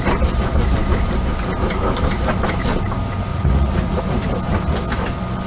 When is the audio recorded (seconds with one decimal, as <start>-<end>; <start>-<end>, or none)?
0.0-3.3; 4.0-5.5